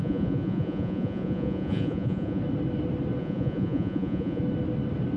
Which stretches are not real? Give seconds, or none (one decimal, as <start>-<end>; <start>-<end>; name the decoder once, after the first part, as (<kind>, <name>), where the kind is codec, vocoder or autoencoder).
0.0-2.4 (vocoder, Vocos); 3.2-4.4